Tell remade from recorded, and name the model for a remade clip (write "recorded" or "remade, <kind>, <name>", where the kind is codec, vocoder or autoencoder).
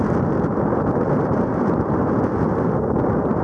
recorded